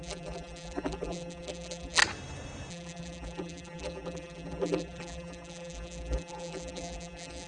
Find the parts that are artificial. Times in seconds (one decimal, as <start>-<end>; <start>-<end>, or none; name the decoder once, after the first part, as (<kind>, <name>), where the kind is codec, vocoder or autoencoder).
0.0-2.0 (vocoder, BigVGAN v2); 2.7-7.5